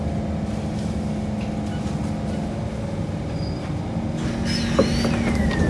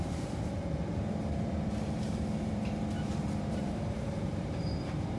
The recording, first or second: first